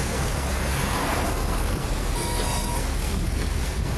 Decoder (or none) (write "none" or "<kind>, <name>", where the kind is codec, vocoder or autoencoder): codec, SNAC